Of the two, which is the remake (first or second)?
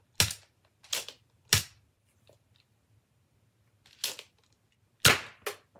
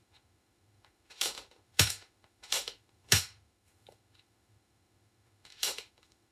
second